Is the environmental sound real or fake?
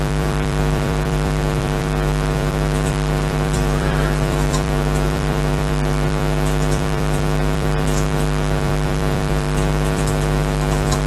fake